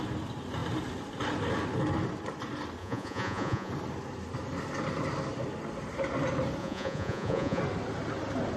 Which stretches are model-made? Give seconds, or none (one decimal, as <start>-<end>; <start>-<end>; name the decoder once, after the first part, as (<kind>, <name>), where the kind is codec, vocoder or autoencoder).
2.8-3.7 (vocoder, Vocos); 6.6-7.6